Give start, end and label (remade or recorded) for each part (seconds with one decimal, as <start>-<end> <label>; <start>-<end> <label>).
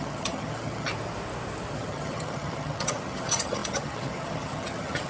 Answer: 0.0-0.9 remade; 0.9-1.7 recorded; 1.7-5.1 remade